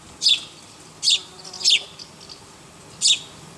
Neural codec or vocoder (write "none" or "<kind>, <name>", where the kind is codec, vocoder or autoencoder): none